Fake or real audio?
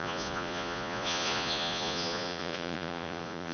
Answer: fake